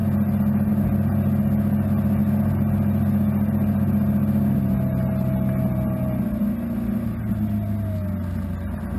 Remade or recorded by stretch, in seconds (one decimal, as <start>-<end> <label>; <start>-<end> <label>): 0.0-9.0 recorded